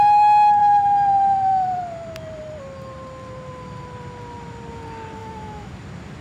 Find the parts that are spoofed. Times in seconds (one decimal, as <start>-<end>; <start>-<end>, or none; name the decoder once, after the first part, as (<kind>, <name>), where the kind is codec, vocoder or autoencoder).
5.2-5.7 (autoencoder, DAC-VAE)